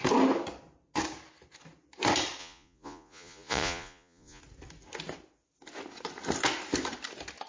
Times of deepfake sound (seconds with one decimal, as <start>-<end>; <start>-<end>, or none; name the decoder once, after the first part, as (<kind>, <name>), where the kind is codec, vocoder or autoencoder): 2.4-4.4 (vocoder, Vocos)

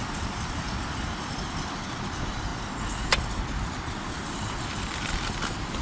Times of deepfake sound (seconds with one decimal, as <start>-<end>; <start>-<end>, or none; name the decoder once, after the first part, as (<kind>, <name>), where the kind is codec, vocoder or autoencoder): 0.0-5.8 (vocoder, BigVGAN v2)

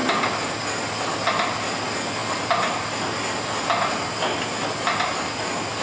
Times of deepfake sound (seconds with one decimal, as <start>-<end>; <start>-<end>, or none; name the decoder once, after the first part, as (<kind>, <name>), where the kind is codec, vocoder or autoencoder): none

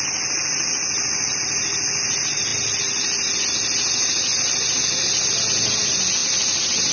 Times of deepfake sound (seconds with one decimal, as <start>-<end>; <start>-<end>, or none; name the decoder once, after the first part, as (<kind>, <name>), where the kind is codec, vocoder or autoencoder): none

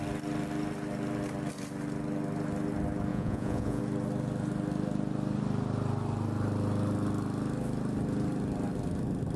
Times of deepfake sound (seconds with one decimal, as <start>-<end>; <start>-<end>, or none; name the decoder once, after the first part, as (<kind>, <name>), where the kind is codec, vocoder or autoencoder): 3.1-3.8 (vocoder, Vocos)

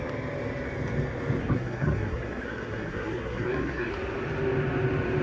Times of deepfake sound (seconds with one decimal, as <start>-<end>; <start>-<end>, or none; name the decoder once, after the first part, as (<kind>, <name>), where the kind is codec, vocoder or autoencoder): 1.4-3.9 (codec, SNAC)

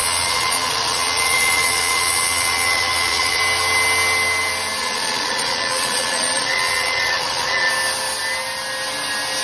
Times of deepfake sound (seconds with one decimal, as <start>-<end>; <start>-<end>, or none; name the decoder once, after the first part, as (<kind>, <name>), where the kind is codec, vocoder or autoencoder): 0.0-3.4 (vocoder, Vocos); 4.8-7.7

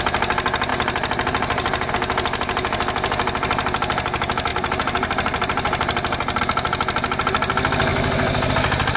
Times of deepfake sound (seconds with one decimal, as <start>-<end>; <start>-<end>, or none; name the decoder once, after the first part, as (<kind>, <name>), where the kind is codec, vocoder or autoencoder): 0.7-1.9 (vocoder, BigVGAN v2); 4.5-6.4; 7.9-8.5